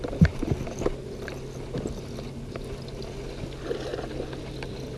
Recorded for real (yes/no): yes